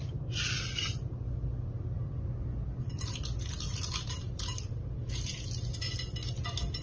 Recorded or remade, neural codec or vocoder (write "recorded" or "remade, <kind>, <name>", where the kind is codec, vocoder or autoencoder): recorded